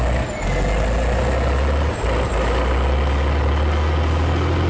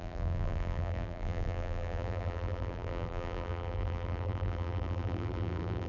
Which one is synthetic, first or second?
second